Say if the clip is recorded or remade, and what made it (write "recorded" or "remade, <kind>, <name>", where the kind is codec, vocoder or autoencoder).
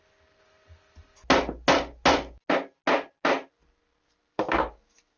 recorded